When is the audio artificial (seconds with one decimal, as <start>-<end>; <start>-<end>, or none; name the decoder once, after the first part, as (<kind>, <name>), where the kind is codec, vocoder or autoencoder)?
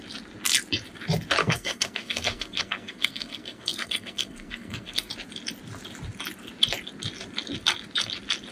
1.4-5.1 (codec, SNAC)